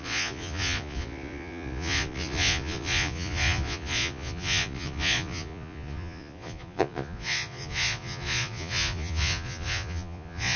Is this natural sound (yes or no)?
no